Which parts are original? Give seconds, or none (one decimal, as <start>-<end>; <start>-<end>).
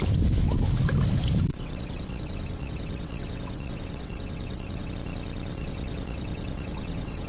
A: 0.0-1.5; 4.9-5.5